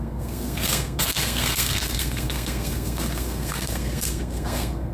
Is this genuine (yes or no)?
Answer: no